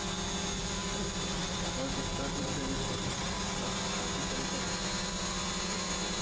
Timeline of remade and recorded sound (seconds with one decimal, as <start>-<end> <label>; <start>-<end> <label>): 0.0-6.2 recorded